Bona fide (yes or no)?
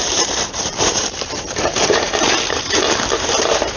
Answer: no